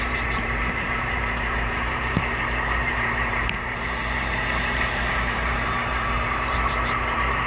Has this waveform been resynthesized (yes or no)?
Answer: yes